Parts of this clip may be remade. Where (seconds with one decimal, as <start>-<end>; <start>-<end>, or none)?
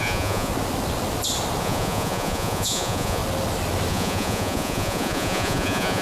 0.0-0.5; 1.6-3.2; 3.9-6.0